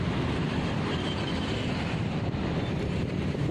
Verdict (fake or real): real